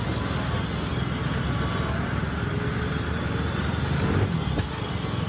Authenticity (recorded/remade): recorded